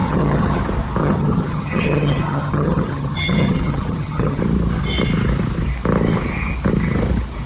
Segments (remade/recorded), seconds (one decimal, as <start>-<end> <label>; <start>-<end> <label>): 0.0-0.6 remade; 0.6-1.0 recorded; 1.0-4.4 remade; 4.4-7.5 recorded